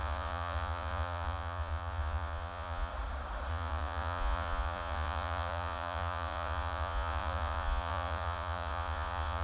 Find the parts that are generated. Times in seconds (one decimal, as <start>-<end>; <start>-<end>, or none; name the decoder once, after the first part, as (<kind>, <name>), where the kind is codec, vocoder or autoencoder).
0.0-2.9 (vocoder, Vocos); 3.5-9.4